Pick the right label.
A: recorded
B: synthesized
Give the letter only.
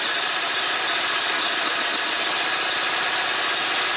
A